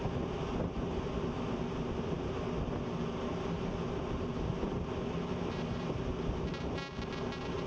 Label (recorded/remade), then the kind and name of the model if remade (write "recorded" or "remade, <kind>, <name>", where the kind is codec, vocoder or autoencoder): recorded